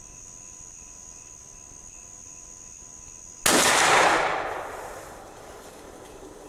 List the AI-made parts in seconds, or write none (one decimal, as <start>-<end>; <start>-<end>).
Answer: none